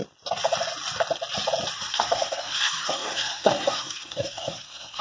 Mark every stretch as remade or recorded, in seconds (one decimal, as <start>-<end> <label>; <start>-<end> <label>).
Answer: 0.0-1.9 recorded; 1.9-5.0 remade